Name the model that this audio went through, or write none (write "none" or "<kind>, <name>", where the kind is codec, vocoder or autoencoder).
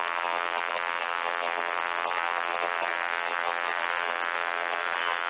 vocoder, BigVGAN v2